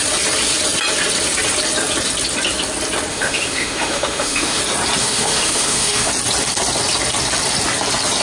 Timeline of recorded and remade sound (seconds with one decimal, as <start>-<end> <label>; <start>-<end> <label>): 0.0-3.1 recorded; 3.1-4.6 remade; 4.6-5.0 recorded; 5.0-6.1 remade; 6.1-8.2 recorded